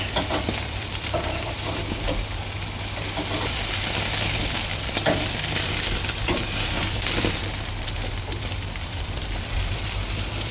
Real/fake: fake